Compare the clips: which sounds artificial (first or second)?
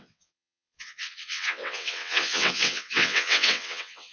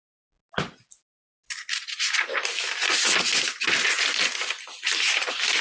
first